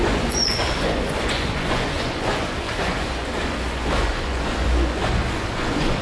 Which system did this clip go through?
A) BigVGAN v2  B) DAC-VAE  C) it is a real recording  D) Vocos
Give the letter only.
D